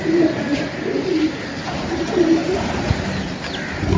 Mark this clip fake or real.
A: real